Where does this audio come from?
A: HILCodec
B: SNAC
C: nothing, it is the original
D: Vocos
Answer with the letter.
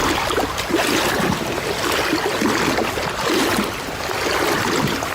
C